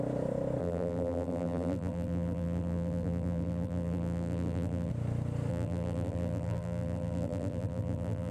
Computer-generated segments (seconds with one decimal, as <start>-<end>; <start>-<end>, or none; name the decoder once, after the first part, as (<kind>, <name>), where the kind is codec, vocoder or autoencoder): 0.6-4.9 (vocoder, BigVGAN v2); 5.5-8.3